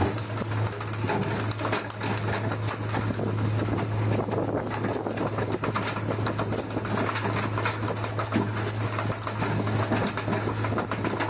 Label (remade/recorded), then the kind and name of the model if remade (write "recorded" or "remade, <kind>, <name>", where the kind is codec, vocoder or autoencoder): recorded